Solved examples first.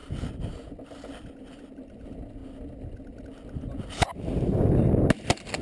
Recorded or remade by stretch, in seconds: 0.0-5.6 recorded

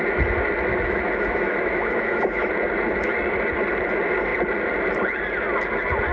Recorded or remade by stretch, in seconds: 0.0-0.7 recorded; 0.7-2.5 remade; 2.5-6.1 recorded